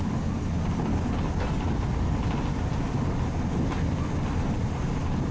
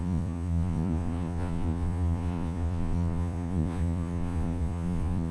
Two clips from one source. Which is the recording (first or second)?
first